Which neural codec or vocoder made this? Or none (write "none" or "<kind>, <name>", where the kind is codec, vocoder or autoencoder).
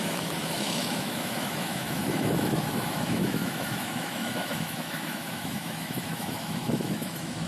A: autoencoder, DAC-VAE